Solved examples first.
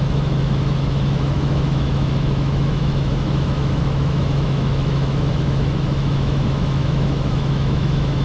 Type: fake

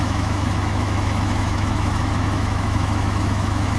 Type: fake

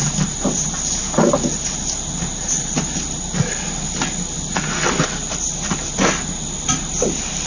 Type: real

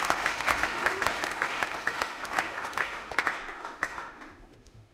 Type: fake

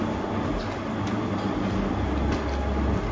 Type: real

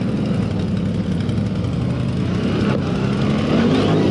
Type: real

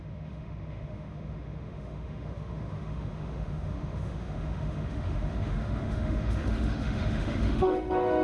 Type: fake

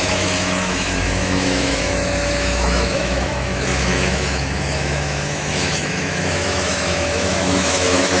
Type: fake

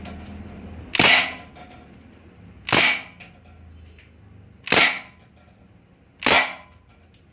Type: real